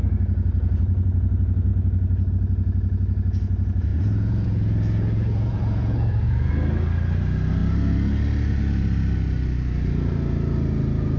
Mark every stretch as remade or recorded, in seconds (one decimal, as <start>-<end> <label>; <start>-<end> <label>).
0.0-3.9 recorded; 3.9-6.5 remade; 6.5-11.2 recorded